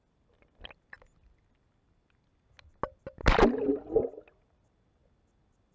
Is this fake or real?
real